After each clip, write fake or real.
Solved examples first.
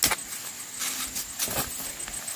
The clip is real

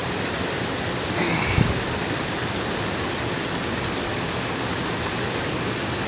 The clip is real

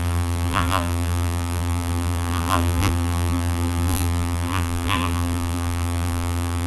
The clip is fake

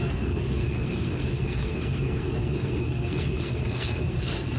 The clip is fake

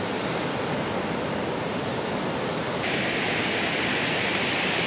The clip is real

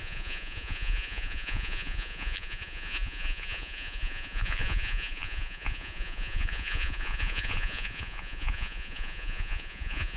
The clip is fake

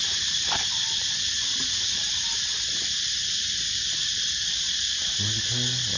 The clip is fake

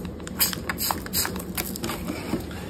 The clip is real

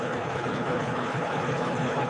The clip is fake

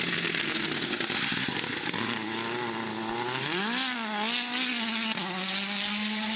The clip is real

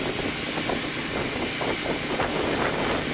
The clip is real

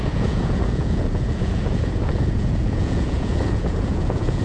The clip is fake